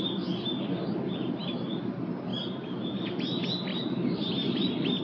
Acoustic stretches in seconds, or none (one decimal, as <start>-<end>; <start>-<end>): 0.0-3.7; 4.3-5.0